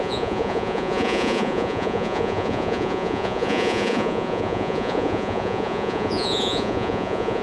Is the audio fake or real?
fake